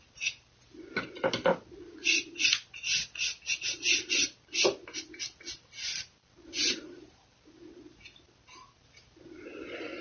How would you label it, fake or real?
real